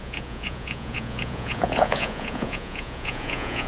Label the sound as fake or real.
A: fake